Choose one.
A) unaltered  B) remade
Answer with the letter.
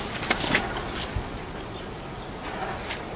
A